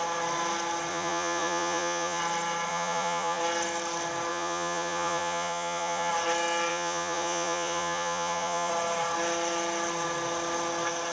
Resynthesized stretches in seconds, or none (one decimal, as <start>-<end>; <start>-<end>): 0.9-2.2; 2.7-3.4; 4.3-6.1; 6.7-8.7